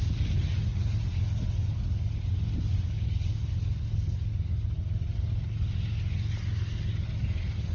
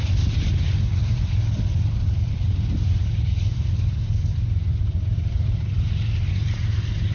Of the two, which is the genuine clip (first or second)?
first